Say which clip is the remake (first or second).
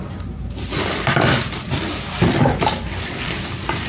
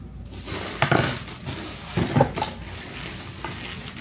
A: first